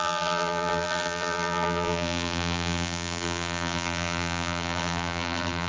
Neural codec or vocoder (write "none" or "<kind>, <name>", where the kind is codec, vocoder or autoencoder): vocoder, BigVGAN v2